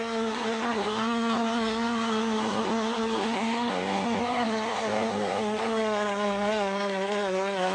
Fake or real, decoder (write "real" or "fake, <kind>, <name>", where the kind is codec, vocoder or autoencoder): fake, codec, SNAC